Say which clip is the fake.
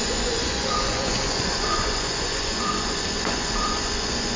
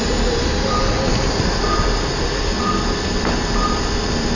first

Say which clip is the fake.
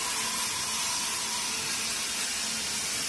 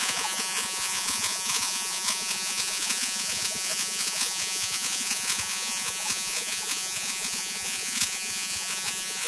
second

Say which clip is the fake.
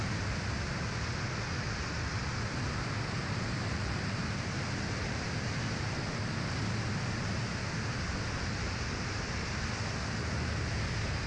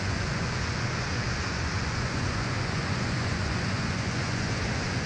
second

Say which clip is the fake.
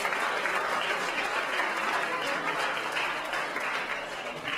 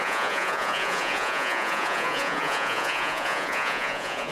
second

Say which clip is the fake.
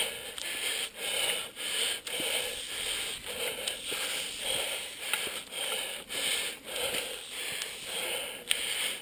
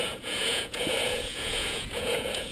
second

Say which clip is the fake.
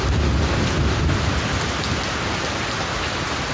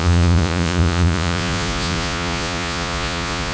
second